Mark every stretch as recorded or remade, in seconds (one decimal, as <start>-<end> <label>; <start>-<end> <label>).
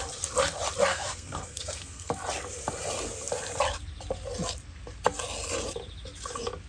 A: 0.0-0.9 recorded; 0.9-2.1 remade; 2.1-6.7 recorded